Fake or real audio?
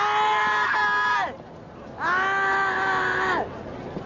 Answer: real